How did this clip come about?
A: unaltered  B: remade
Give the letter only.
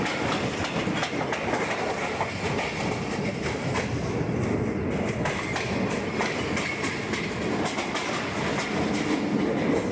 A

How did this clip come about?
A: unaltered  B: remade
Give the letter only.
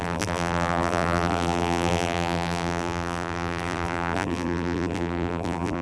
B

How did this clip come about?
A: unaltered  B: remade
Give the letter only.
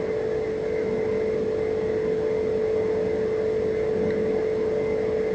A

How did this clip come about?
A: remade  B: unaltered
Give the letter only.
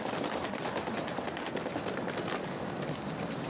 B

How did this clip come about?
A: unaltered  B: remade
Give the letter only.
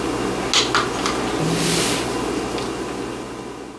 A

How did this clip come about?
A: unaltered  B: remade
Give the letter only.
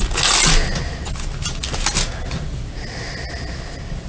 A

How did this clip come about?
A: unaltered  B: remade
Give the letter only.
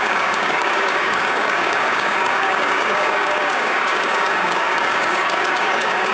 B